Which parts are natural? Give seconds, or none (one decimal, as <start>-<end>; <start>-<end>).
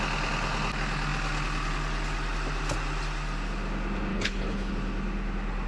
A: 0.0-4.1; 4.7-5.7